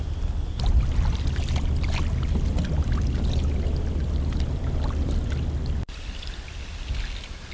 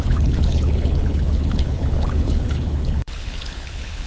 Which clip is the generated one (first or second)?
second